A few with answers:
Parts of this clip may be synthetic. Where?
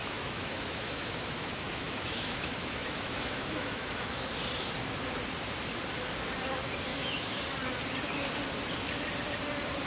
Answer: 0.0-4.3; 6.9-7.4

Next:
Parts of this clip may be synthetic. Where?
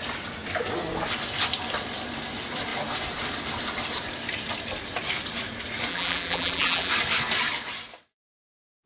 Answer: 5.9-6.9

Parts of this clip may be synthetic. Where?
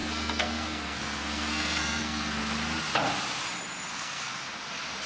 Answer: 0.0-2.4; 3.9-4.4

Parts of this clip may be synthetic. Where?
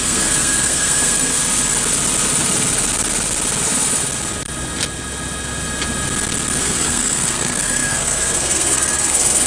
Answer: 0.0-1.4; 6.6-9.5